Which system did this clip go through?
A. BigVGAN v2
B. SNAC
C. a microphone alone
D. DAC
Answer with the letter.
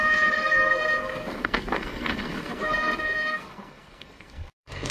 B